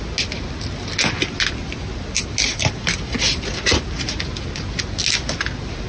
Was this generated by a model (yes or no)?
no